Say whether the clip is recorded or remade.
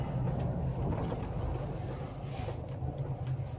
recorded